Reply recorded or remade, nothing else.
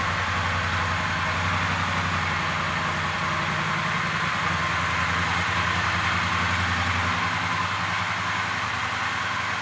recorded